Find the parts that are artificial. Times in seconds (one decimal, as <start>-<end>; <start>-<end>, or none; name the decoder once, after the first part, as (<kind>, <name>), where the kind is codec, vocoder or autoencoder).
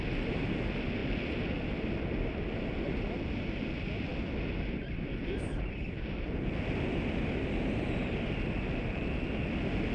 none